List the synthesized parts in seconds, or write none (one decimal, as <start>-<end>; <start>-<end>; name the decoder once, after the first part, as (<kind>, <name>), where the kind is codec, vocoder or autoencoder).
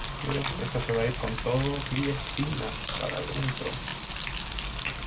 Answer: none